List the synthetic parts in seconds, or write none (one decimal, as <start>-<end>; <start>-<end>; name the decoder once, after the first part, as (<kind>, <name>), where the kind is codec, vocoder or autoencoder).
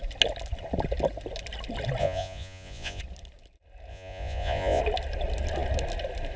2.0-3.0 (vocoder, Vocos); 3.9-4.8